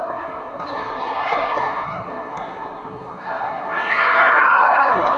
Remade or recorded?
remade